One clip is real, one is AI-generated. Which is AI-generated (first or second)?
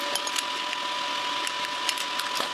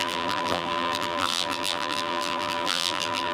second